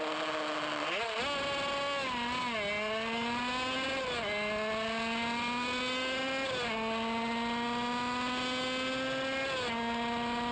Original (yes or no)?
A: yes